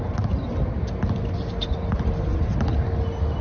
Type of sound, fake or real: real